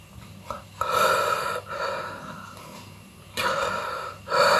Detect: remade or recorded recorded